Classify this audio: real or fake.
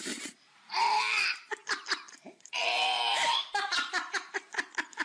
fake